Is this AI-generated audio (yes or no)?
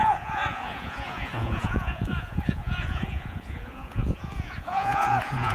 yes